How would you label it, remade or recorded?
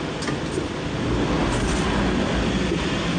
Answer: recorded